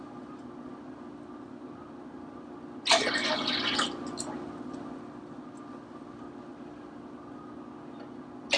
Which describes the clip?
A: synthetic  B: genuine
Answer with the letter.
B